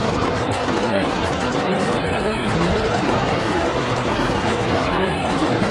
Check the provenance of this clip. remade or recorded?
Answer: remade